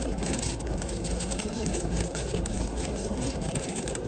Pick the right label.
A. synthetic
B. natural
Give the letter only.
A